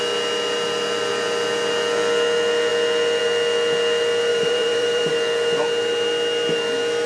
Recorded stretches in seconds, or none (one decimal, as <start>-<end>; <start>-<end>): 0.0-4.3; 5.1-7.1